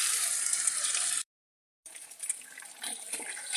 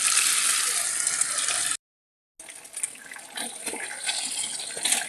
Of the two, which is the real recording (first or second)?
second